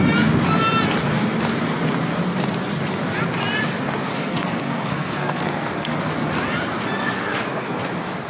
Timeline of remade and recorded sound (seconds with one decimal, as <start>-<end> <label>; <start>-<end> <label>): 0.0-4.1 recorded; 4.1-6.0 remade; 6.0-7.0 recorded; 7.0-7.8 remade; 7.8-8.3 recorded